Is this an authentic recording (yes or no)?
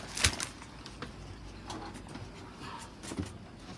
yes